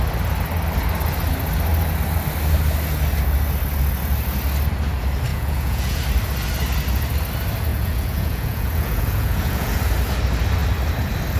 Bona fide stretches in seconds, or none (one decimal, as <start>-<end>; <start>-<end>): 0.0-5.3; 6.0-7.7; 9.8-11.4